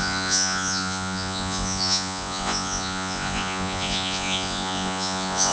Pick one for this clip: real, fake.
fake